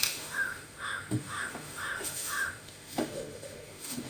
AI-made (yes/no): yes